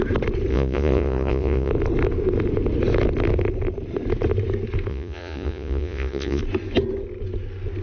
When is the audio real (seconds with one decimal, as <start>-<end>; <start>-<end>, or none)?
0.0-0.5; 1.7-4.9; 6.4-7.8